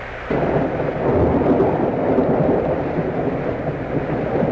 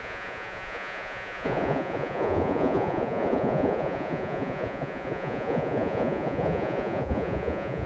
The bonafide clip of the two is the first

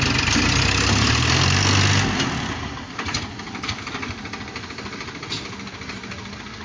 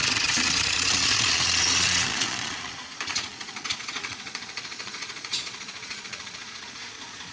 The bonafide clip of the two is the first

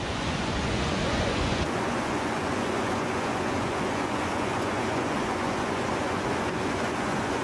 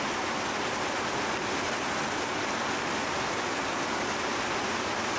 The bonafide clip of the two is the second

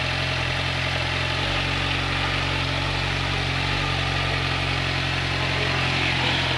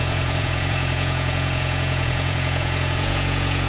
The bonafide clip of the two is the first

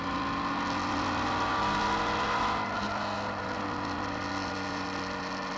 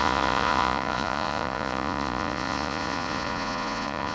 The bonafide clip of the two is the first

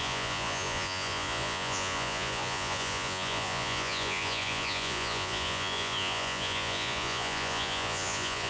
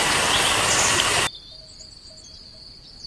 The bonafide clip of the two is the second